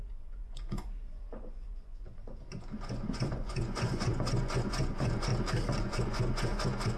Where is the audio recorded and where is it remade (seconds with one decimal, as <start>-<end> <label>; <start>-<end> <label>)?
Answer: 0.0-5.3 remade; 5.3-5.8 recorded; 5.8-7.0 remade